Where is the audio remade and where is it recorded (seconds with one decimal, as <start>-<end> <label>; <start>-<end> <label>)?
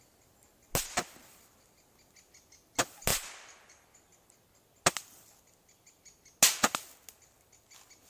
0.0-8.1 recorded